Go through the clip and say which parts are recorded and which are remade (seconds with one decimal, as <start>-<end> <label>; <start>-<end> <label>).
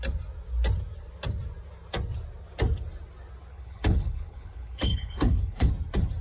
0.0-3.5 recorded; 3.5-5.7 remade; 5.7-6.2 recorded